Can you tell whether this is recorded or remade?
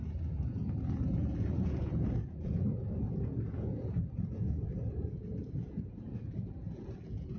remade